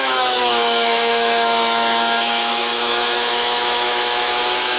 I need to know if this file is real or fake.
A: fake